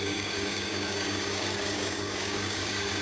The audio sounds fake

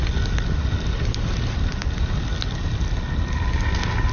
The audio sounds real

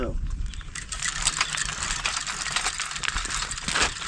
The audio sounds real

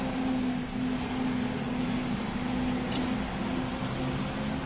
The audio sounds real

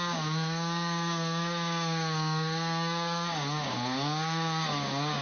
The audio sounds fake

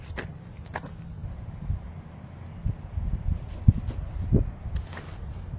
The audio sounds real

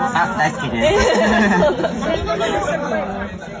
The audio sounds real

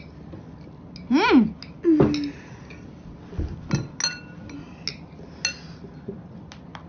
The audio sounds real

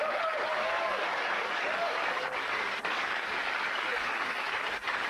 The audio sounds fake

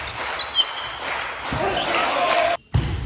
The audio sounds real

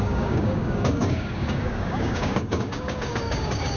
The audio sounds fake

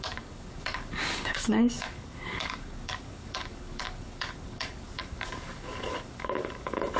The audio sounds fake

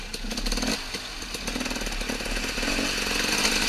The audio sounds real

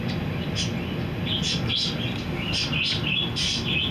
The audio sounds real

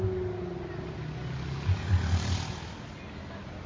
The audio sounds real